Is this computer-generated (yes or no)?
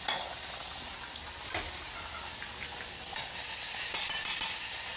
no